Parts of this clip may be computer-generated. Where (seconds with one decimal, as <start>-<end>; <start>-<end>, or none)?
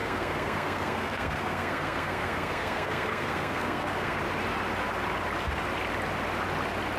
0.0-4.2